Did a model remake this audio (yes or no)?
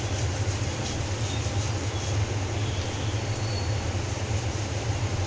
no